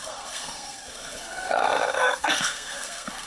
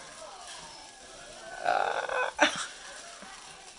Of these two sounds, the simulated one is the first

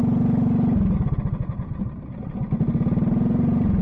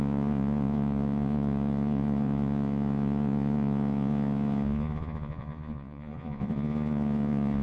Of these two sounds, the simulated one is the second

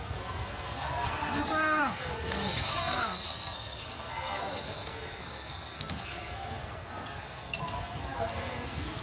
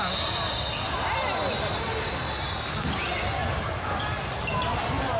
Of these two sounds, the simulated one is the first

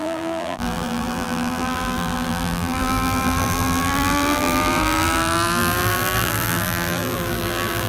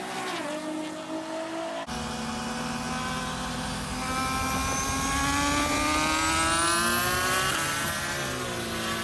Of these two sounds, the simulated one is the first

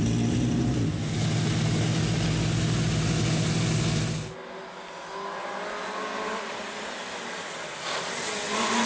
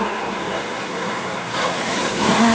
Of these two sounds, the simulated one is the second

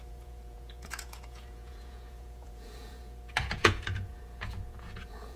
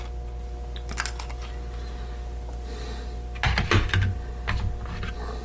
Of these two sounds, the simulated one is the first